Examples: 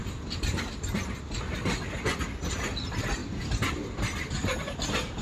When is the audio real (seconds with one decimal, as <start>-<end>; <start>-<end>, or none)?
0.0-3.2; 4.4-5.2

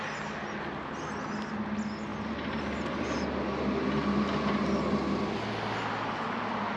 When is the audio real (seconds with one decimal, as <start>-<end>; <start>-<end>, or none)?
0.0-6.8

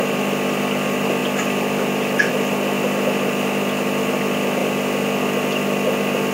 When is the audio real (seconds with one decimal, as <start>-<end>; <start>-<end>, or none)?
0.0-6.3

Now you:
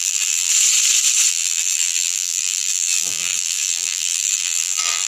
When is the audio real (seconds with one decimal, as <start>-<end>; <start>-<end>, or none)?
0.5-1.3

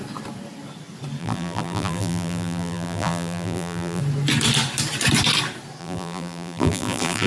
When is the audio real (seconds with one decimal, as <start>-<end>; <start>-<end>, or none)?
0.0-1.2; 4.0-5.8

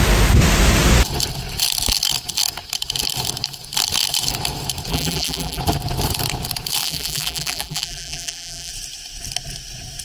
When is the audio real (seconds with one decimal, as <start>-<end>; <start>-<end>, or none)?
0.0-4.9; 5.6-6.8; 8.7-10.0

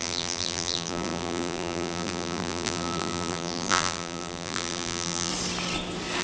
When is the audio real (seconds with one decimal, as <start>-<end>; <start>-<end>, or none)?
5.3-6.2

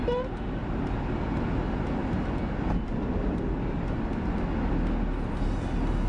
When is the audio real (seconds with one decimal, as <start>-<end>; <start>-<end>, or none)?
0.0-6.1